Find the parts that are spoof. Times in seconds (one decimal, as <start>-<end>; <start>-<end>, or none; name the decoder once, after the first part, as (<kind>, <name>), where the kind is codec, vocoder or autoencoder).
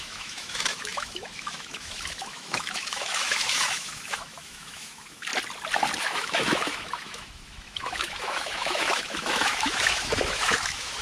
0.0-5.3 (autoencoder, DAC-VAE); 6.0-11.0